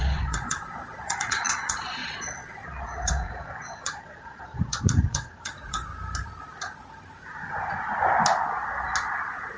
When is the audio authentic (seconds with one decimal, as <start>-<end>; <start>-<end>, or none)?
5.9-9.6